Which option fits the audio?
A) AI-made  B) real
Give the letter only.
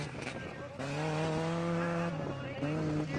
B